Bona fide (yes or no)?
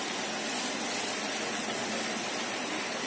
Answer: yes